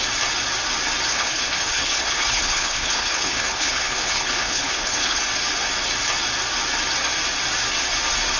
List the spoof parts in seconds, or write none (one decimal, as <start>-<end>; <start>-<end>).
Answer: 1.1-5.2